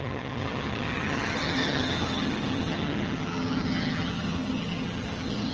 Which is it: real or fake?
fake